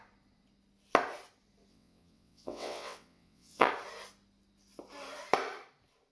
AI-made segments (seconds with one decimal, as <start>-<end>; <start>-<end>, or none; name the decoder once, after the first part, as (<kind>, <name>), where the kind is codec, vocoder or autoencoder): 1.7-3.7 (vocoder, WaveNeXt)